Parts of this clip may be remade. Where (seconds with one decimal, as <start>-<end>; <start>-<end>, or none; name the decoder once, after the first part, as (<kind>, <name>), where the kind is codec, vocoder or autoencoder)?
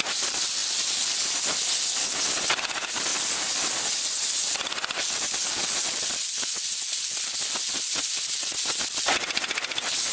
none